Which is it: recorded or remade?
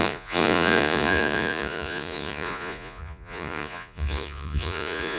remade